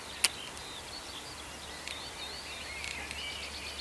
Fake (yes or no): no